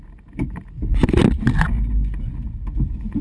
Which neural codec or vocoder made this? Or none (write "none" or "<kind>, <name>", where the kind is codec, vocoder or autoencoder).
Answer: none